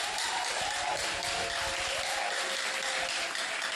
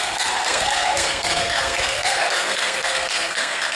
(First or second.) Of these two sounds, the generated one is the second